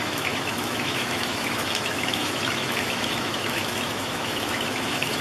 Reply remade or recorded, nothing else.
remade